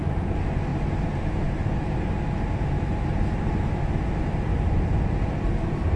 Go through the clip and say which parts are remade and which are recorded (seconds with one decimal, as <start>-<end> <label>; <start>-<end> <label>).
0.0-0.7 recorded; 0.7-3.8 remade; 3.8-6.0 recorded